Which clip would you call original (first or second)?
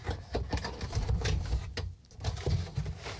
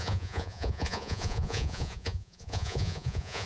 first